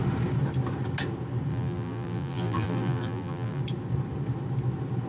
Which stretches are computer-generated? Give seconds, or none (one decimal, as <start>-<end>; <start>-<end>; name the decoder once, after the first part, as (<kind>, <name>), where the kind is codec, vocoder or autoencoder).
1.5-3.6 (vocoder, BigVGAN v2)